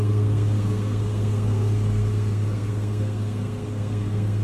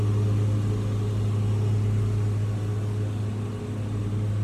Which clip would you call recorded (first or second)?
second